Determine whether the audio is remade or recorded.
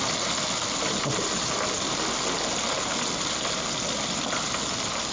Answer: recorded